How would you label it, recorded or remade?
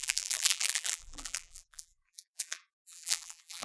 remade